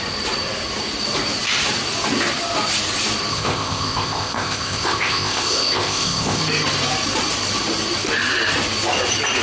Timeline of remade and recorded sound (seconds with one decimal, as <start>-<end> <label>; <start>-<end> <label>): 0.0-3.3 recorded; 3.3-6.4 remade; 6.4-9.4 recorded